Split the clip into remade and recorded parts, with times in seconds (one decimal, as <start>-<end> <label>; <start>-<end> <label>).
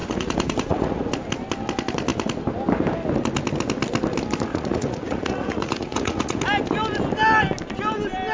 0.0-1.1 remade; 1.1-4.5 recorded; 4.5-6.4 remade; 6.4-8.3 recorded